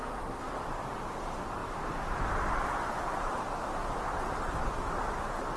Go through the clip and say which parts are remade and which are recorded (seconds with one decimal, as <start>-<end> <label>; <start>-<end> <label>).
0.0-0.5 remade; 0.5-5.6 recorded